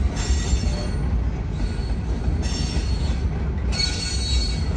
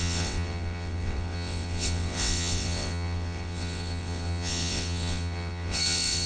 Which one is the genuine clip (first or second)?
first